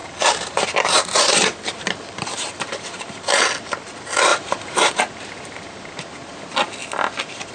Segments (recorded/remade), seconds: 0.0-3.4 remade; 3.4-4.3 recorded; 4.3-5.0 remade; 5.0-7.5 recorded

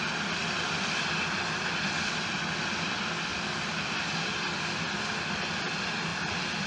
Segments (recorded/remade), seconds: 0.0-3.3 recorded; 3.3-4.1 remade; 4.1-6.1 recorded; 6.1-6.7 remade

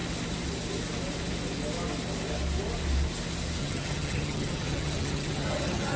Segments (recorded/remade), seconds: 0.0-3.6 recorded; 3.6-6.0 remade